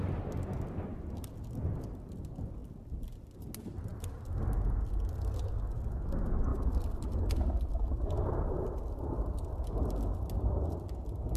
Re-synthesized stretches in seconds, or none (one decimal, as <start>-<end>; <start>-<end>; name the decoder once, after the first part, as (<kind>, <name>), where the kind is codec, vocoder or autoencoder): 3.9-4.4 (vocoder, BigVGAN v2); 6.5-10.0